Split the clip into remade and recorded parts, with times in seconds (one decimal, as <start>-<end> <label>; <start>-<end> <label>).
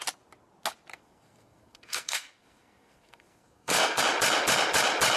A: 0.0-0.9 recorded; 0.9-4.0 remade; 4.0-5.2 recorded